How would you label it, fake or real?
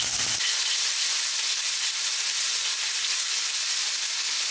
real